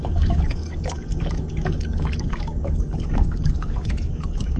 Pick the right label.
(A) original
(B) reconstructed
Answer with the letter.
B